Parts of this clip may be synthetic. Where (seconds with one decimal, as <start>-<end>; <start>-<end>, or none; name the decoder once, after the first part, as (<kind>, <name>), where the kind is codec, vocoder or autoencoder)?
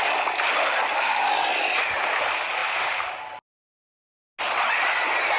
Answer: none